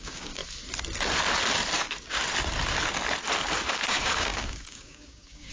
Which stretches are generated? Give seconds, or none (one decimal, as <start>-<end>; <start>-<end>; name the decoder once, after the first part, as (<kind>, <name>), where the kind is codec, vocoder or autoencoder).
0.0-0.4 (codec, DAC); 3.7-5.5